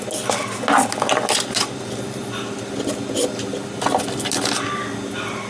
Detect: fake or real real